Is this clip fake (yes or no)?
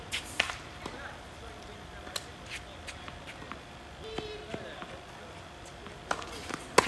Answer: no